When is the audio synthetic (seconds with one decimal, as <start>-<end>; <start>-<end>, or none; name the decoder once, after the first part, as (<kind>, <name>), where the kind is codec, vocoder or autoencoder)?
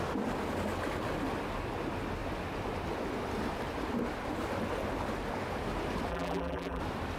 6.1-6.8 (vocoder, BigVGAN v2)